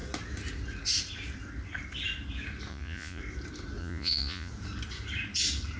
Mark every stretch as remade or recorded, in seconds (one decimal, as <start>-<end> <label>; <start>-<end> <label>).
0.0-2.7 recorded; 2.7-3.2 remade; 3.2-3.8 recorded; 3.8-4.5 remade; 4.5-5.8 recorded